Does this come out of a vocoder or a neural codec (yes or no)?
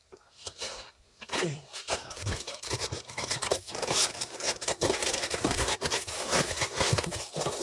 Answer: yes